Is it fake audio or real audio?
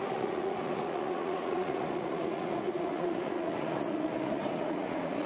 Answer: fake